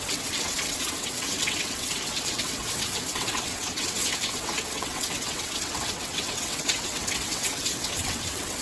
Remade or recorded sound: remade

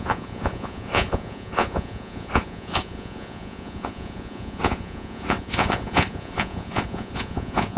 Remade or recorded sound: remade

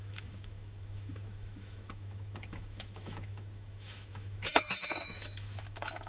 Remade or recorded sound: remade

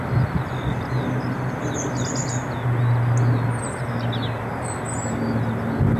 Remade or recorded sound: recorded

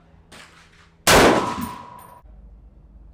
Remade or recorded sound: recorded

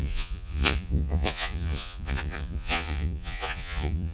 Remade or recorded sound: remade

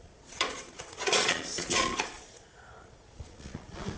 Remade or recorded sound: remade